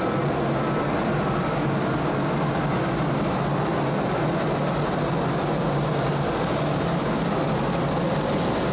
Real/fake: real